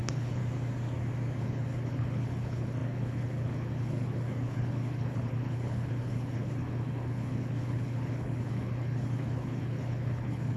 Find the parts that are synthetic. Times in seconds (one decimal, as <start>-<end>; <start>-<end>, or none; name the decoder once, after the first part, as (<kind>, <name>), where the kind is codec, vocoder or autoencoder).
0.0-0.4 (codec, HILCodec); 1.4-10.6